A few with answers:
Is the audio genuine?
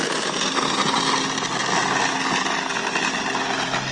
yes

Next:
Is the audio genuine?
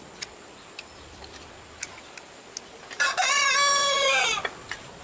yes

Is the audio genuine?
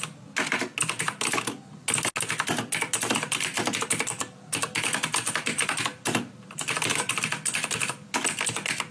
yes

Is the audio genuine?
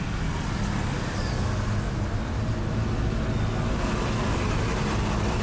yes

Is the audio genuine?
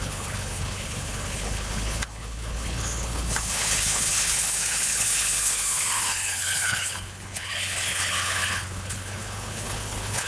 no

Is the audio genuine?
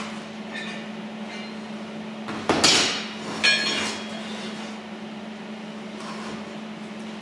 yes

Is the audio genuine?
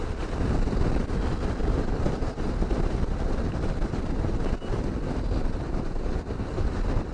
yes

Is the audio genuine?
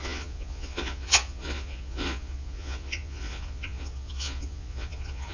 no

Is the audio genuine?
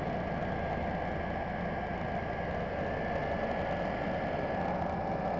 yes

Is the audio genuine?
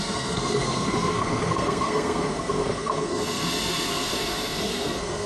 no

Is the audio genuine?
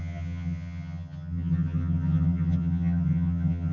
no